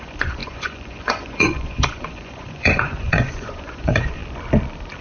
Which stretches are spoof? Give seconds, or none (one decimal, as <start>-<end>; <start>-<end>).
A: 0.0-4.2